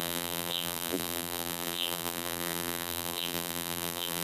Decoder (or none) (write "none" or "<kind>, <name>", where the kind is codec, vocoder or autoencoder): vocoder, BigVGAN v2